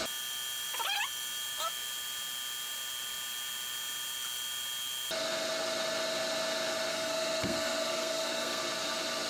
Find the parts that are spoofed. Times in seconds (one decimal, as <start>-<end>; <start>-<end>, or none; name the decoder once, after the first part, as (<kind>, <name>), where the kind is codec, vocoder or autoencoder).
6.9-8.6 (codec, SNAC)